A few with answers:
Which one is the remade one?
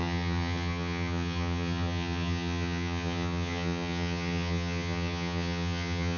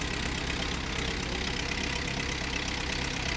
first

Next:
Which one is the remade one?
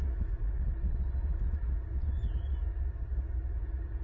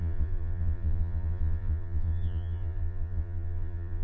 second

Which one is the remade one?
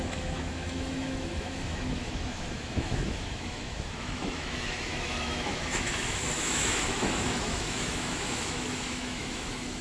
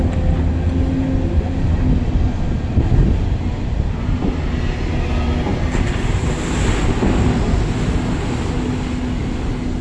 first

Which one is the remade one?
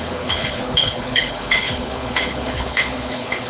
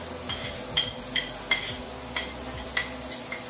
first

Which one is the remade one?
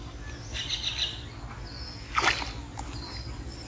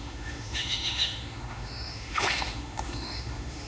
second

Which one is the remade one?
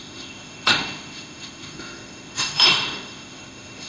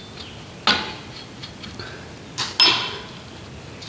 first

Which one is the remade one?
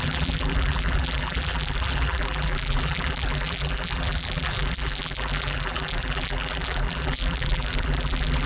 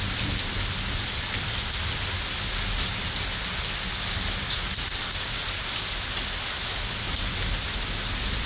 first